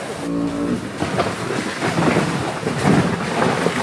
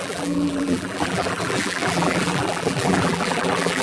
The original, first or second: first